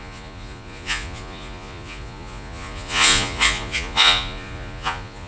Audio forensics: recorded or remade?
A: remade